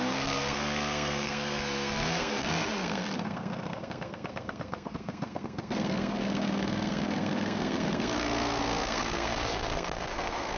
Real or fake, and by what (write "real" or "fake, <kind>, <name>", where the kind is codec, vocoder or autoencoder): fake, codec, SNAC